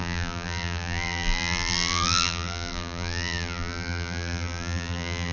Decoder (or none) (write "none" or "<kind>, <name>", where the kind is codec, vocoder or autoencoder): vocoder, BigVGAN v2